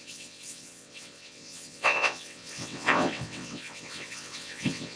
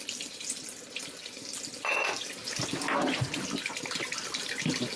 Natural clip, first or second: second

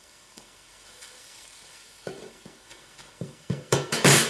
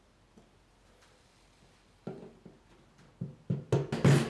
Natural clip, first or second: second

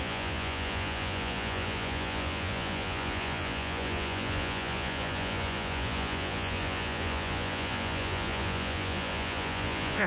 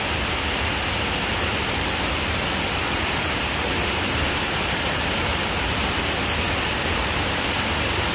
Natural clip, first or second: second